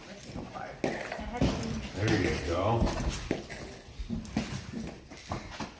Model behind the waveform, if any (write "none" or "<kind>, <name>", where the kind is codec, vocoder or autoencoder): none